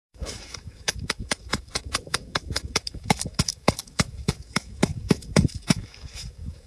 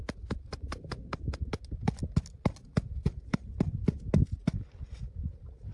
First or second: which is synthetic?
first